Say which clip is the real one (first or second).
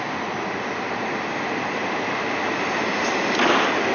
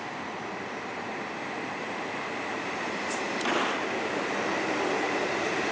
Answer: first